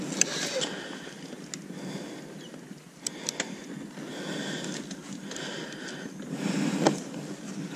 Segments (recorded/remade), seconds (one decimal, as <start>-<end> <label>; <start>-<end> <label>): 0.0-7.8 recorded